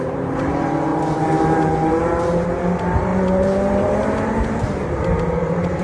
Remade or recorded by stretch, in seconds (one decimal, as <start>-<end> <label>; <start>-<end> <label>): 0.0-5.8 remade